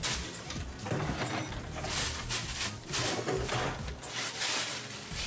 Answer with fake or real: real